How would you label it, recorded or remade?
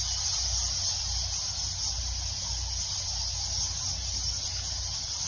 recorded